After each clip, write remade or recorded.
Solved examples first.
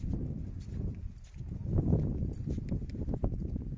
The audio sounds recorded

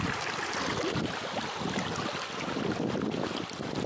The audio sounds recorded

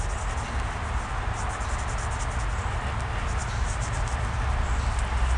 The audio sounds recorded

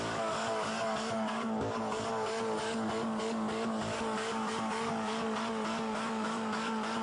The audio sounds remade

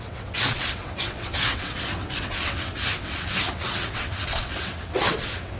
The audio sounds remade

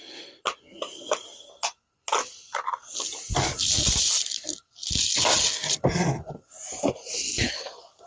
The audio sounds recorded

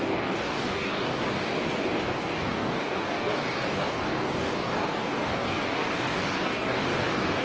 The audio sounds remade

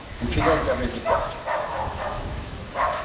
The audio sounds remade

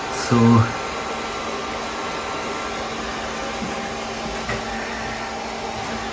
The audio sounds recorded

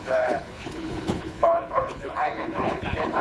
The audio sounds remade